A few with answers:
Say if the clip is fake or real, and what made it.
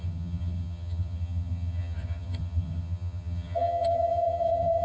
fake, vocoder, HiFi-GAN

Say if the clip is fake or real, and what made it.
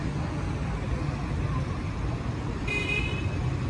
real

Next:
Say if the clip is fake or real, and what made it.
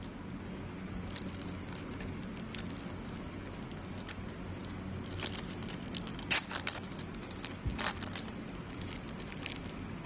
real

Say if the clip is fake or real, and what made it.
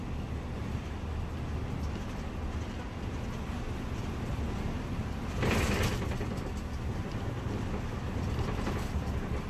real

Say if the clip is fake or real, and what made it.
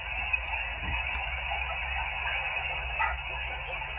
real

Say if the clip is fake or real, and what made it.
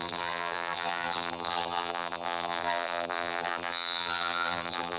fake, vocoder, BigVGAN v2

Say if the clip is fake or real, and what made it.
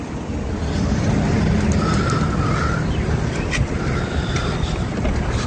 real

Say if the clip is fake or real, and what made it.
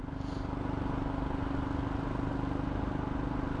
real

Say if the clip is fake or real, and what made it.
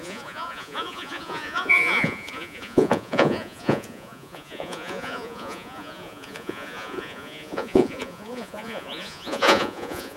fake, vocoder, Vocos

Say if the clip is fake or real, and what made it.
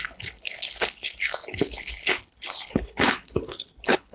fake, codec, HILCodec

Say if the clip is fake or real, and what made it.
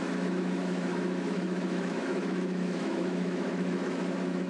fake, autoencoder, DAC-VAE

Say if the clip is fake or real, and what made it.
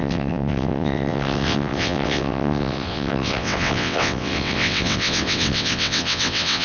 fake, vocoder, WaveNeXt